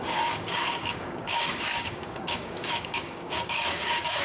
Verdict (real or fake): fake